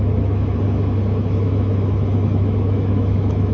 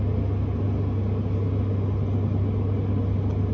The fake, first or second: first